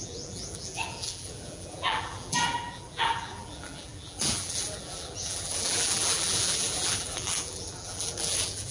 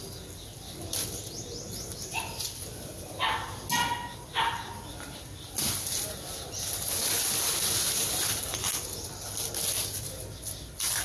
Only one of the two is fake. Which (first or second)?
first